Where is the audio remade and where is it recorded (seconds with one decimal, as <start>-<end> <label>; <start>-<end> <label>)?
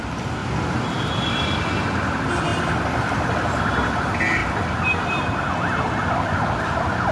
0.0-0.4 recorded; 0.4-1.2 remade; 1.2-2.5 recorded; 2.5-3.3 remade; 3.3-4.4 recorded; 4.4-5.8 remade; 5.8-7.1 recorded